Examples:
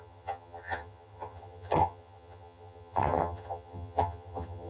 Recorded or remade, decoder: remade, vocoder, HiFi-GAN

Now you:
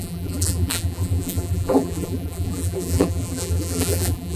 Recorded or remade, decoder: remade, vocoder, BigVGAN v2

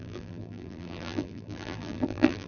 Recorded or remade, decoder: remade, vocoder, BigVGAN v2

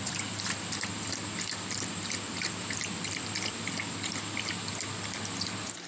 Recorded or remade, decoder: recorded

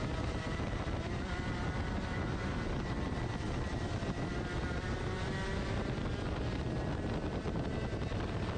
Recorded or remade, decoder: recorded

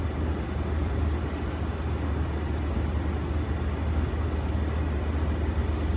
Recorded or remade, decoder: recorded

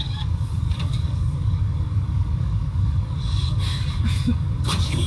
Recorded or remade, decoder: remade, codec, DAC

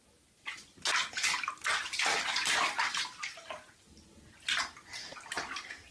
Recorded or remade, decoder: recorded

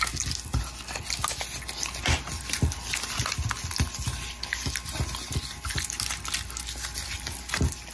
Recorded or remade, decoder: recorded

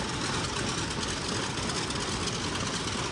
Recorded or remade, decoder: recorded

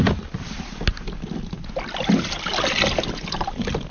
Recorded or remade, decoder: recorded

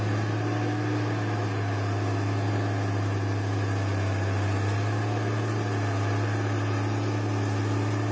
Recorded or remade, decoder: recorded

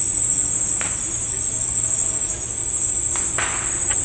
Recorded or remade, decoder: recorded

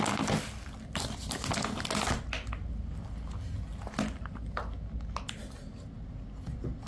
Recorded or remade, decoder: recorded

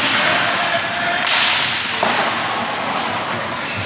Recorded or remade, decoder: recorded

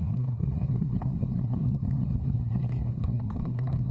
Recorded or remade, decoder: remade, codec, SNAC